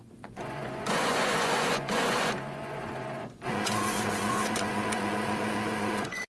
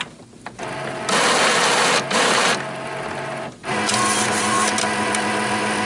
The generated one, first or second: first